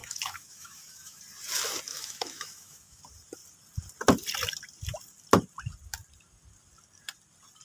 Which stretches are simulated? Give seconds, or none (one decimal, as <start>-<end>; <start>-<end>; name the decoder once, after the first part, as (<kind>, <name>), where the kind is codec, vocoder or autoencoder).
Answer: 0.0-1.2 (autoencoder, DAC-VAE); 1.9-3.0